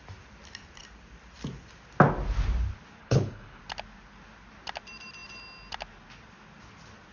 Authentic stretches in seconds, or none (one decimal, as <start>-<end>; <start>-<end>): 0.0-3.0; 3.6-7.1